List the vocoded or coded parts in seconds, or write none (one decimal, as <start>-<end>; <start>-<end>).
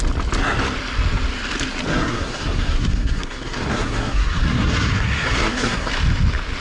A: 1.9-5.9